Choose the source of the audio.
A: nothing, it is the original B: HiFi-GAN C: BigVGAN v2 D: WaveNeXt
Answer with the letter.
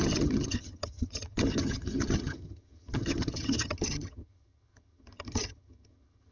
B